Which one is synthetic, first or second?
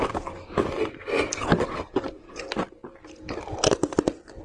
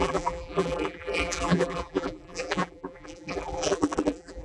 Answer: second